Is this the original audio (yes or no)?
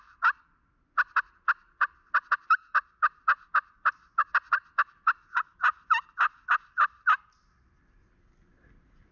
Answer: yes